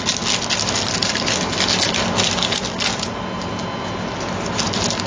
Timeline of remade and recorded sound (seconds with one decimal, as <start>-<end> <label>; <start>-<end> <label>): 0.0-5.1 recorded